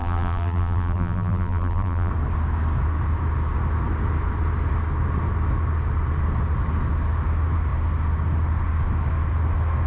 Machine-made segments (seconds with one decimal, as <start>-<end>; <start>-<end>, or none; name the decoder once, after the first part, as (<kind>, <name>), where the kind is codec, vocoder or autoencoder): 0.0-2.1 (vocoder, BigVGAN v2)